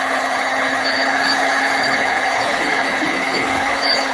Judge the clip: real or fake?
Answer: fake